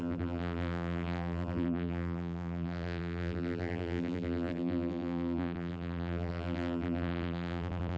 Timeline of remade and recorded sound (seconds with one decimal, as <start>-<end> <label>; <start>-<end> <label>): 0.0-8.0 remade